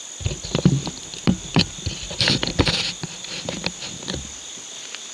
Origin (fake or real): real